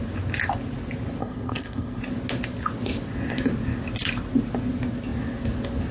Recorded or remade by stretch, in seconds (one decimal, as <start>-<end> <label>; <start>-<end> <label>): 0.0-1.2 recorded; 1.2-2.0 remade; 2.0-5.9 recorded